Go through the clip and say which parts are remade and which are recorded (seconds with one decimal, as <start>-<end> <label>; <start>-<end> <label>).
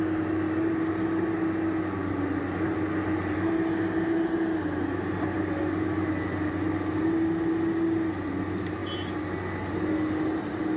0.0-10.8 recorded